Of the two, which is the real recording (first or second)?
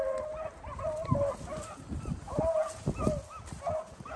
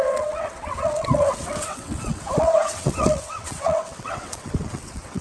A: first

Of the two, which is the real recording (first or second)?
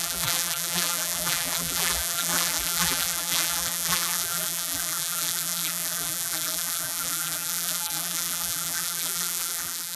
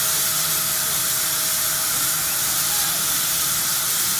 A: second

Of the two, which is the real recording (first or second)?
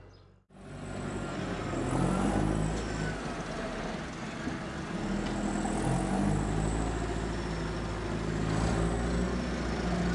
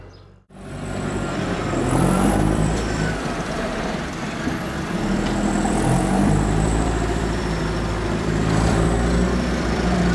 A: first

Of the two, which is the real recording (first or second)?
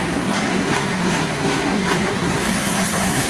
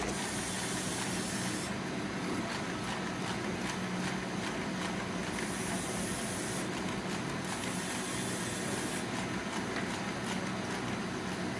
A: second